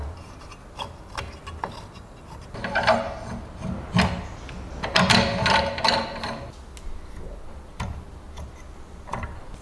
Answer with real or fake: real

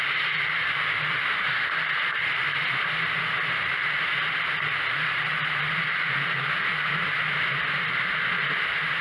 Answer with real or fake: real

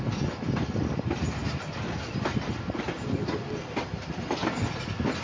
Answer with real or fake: real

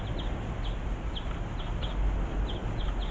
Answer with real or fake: real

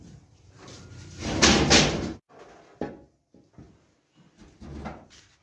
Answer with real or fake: real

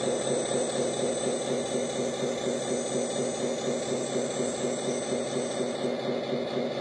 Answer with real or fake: real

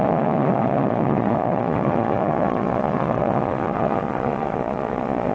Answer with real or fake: fake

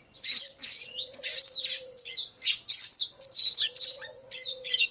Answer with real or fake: fake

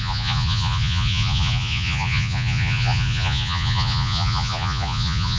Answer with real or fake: fake